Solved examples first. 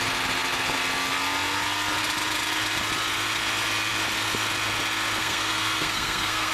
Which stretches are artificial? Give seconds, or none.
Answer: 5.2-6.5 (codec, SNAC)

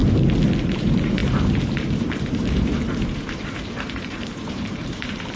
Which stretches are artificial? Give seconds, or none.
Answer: 0.6-5.4 (vocoder, BigVGAN v2)